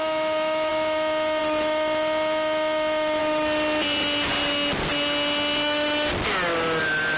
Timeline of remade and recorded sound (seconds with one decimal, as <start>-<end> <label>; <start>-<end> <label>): 0.0-7.2 recorded